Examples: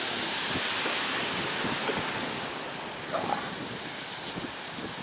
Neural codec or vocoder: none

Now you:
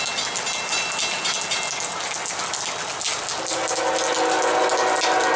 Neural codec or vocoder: none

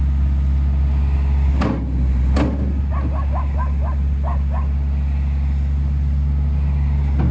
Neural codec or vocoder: none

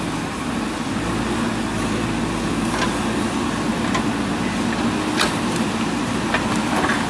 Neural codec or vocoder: none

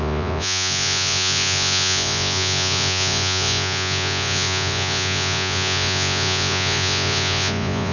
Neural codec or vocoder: vocoder, Vocos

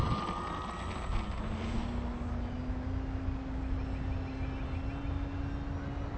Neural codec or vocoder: none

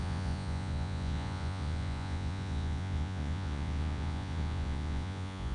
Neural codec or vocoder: vocoder, Vocos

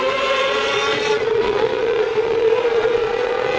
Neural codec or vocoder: vocoder, Vocos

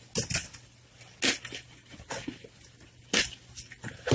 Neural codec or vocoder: none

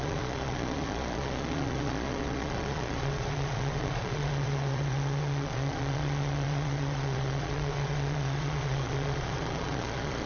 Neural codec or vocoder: vocoder, Vocos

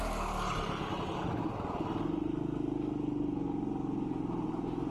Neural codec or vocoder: none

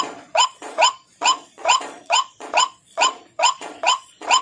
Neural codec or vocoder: vocoder, Vocos